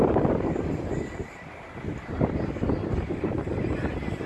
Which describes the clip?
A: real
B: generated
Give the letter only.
A